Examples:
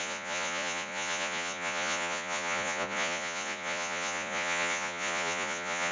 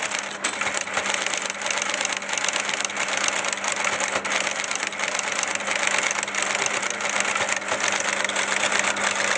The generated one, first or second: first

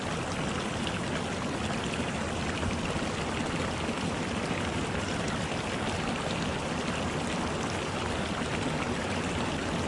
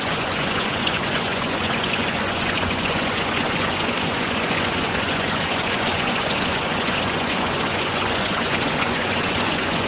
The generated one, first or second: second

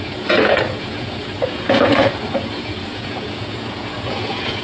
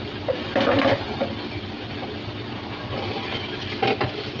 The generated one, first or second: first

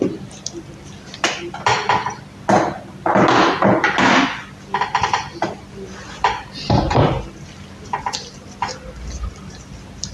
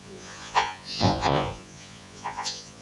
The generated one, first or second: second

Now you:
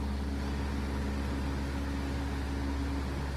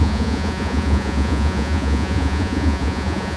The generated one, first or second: second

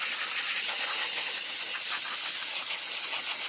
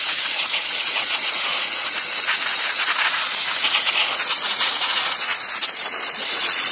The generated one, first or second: second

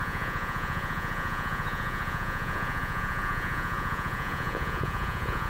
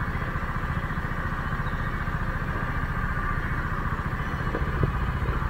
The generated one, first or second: first